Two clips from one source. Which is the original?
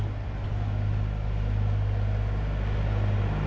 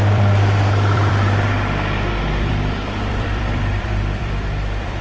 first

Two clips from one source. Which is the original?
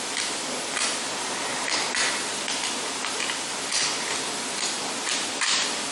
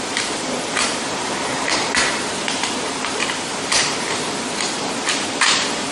first